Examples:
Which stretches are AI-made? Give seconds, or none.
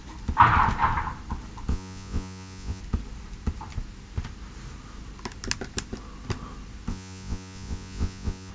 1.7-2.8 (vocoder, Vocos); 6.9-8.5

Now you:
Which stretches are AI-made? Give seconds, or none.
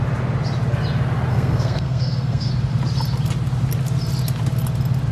1.3-2.5 (codec, SNAC)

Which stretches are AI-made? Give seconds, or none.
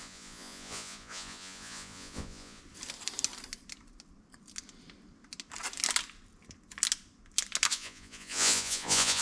0.0-2.6 (vocoder, Vocos); 7.7-9.2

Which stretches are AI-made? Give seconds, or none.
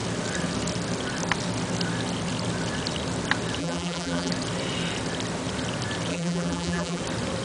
3.6-4.3 (vocoder, BigVGAN v2); 6.1-7.0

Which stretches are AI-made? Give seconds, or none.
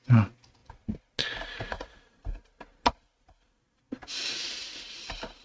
none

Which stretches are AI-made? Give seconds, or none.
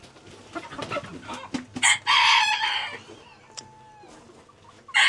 none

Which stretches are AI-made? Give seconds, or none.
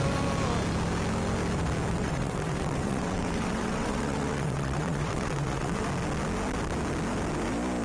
1.9-5.8 (vocoder, WaveNeXt)